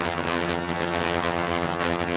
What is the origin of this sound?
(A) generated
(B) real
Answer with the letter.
A